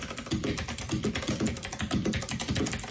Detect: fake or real real